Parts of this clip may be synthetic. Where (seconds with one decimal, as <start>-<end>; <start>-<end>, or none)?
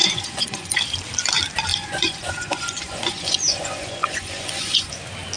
0.0-0.8; 1.7-4.9